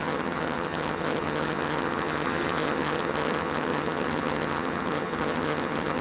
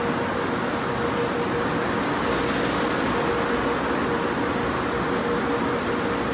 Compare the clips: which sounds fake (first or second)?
first